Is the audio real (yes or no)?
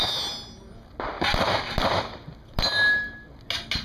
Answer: yes